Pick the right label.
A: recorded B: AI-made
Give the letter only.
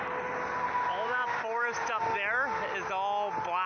A